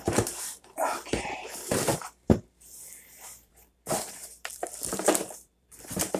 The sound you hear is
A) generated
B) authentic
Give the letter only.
A